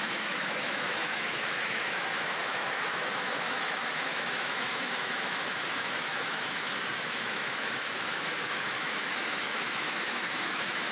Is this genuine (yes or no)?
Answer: no